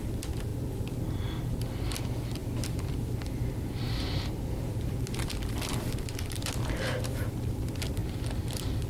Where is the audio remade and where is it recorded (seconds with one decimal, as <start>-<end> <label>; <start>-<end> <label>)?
0.0-0.5 remade; 0.5-2.0 recorded; 2.0-8.0 remade; 8.0-8.5 recorded; 8.5-8.9 remade